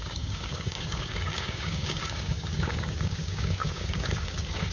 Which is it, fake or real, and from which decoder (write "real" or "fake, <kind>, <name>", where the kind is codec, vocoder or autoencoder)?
fake, codec, DAC